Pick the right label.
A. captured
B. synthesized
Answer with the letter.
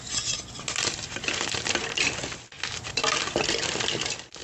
A